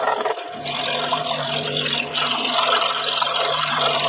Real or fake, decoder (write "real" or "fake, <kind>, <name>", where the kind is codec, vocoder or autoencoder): fake, vocoder, BigVGAN v2